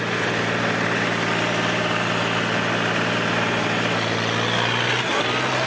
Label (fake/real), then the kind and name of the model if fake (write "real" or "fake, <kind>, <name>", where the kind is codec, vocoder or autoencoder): real